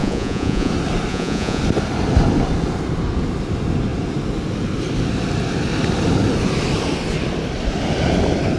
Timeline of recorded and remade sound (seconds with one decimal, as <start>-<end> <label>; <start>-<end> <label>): 0.0-0.7 remade; 0.7-1.1 recorded; 1.1-1.6 remade; 1.6-8.6 recorded